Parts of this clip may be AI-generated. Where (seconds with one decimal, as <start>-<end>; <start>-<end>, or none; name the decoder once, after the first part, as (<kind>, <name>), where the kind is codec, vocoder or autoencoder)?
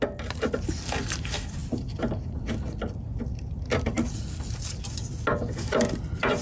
none